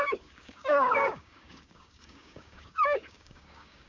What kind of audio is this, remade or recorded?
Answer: remade